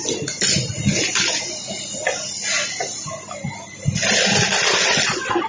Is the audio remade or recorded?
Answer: recorded